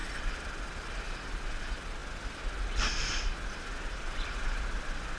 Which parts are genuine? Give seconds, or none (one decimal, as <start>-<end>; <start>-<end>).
1.6-5.2